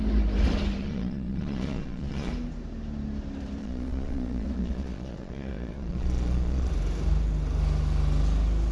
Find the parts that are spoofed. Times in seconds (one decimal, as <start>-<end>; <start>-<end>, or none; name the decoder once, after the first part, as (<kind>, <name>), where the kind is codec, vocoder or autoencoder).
0.8-2.3 (vocoder, Vocos); 3.6-6.7